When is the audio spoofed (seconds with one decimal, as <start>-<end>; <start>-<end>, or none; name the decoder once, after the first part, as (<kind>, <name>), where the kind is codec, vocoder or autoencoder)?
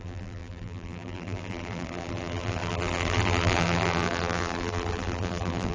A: 0.0-5.7 (vocoder, BigVGAN v2)